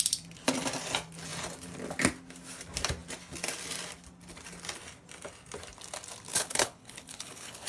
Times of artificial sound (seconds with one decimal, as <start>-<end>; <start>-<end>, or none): 6.3-7.7